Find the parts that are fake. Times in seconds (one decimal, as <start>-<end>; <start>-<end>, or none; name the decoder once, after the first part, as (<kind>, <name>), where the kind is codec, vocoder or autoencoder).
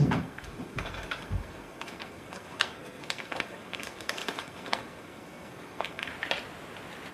0.0-6.1 (codec, SNAC)